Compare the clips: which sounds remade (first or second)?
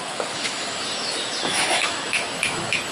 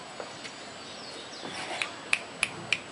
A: first